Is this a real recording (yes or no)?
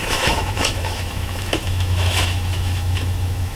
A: no